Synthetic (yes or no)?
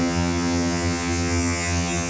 yes